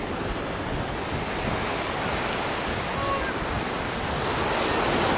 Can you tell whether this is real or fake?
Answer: real